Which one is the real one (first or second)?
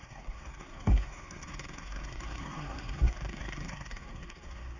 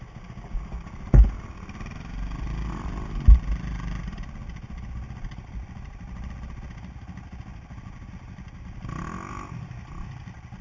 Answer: second